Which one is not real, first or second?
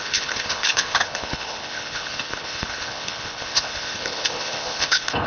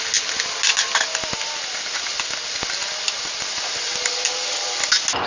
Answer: first